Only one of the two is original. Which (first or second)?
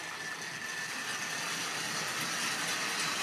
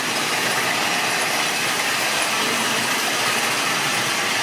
first